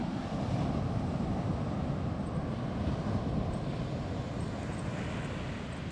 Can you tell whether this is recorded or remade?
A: recorded